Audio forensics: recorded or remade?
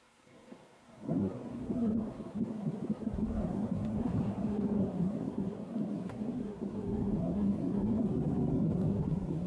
remade